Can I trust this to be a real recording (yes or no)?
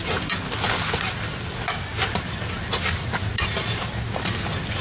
yes